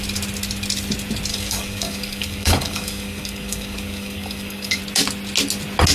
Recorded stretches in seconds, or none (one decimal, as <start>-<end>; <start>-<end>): 0.0-1.3; 4.8-5.9